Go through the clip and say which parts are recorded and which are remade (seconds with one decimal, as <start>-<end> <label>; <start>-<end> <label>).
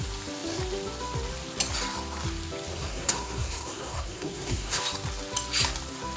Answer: 0.0-2.7 recorded; 2.7-4.8 remade; 4.8-6.2 recorded